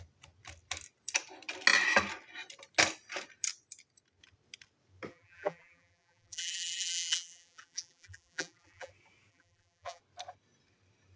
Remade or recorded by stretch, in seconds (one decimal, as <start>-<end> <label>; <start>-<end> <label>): 0.0-5.1 recorded; 5.1-8.9 remade; 8.9-9.3 recorded; 9.3-10.0 remade; 10.0-11.2 recorded